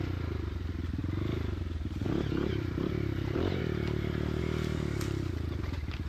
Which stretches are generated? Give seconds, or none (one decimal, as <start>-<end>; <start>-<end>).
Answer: 2.5-4.4